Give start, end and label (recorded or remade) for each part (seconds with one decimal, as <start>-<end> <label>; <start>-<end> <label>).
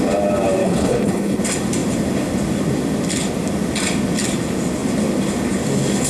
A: 0.0-0.6 recorded; 0.6-1.4 remade; 1.4-6.1 recorded